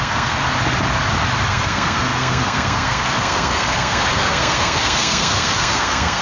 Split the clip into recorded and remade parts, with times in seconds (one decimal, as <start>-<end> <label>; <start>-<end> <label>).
0.0-0.4 remade; 0.4-1.5 recorded; 1.5-6.2 remade